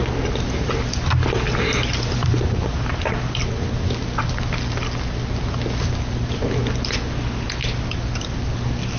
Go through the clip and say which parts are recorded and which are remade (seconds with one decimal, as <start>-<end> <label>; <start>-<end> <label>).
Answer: 0.0-9.0 recorded